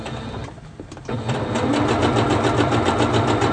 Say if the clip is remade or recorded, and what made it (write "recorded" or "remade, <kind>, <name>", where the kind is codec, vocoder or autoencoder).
recorded